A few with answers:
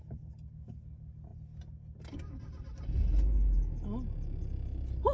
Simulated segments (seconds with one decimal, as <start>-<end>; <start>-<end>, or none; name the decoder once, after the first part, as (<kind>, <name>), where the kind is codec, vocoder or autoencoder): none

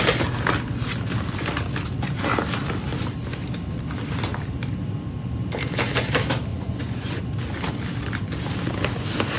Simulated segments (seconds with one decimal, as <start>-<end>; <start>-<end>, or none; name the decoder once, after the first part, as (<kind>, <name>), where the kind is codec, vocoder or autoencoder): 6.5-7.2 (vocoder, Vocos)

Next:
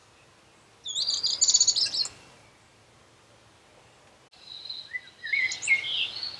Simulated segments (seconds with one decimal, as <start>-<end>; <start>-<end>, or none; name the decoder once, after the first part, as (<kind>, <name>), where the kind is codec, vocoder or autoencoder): none

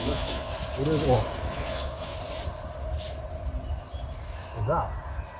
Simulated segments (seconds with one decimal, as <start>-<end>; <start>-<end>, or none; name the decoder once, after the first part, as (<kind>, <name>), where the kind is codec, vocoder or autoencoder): 0.0-0.5 (vocoder, Vocos); 1.5-2.1

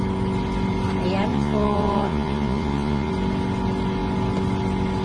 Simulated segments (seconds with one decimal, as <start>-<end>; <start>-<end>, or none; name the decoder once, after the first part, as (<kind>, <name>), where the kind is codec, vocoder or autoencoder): 1.3-3.1 (vocoder, Vocos)